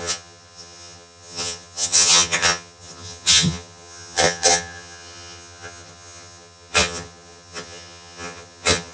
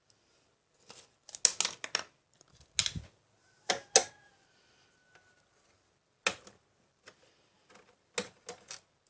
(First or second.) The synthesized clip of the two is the first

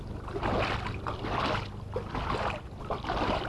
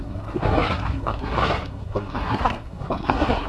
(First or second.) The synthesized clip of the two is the second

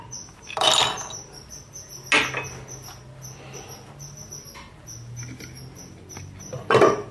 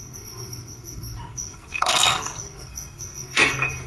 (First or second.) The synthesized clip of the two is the second